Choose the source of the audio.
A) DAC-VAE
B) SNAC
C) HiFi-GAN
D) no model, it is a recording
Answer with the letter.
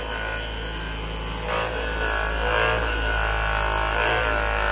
D